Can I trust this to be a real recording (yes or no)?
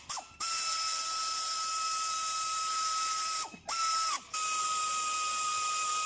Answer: yes